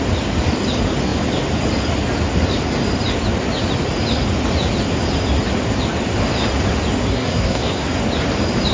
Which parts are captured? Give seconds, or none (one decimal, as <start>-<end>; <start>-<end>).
0.0-7.1; 8.0-8.7